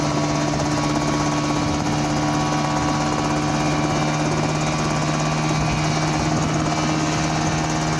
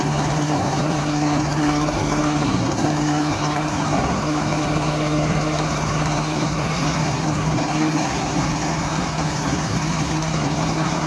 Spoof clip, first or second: second